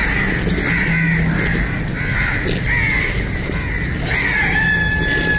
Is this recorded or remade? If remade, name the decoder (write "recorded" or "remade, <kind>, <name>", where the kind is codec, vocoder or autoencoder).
recorded